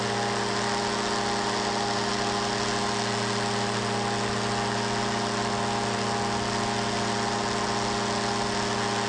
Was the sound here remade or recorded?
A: recorded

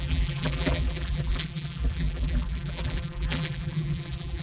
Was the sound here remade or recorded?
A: remade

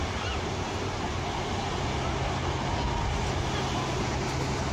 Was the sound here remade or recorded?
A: recorded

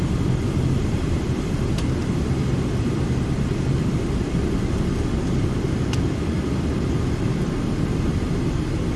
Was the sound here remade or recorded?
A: remade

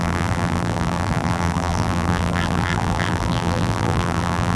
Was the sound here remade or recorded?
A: remade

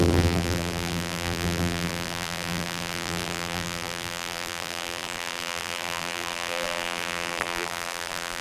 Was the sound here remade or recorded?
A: remade